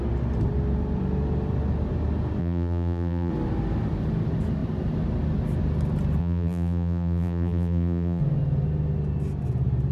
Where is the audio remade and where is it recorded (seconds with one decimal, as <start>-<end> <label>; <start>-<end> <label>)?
0.0-2.4 recorded; 2.4-3.3 remade; 3.3-6.2 recorded; 6.2-8.2 remade; 8.2-9.9 recorded